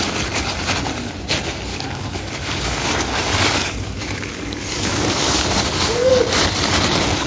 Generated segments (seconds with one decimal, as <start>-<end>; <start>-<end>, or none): 1.7-6.1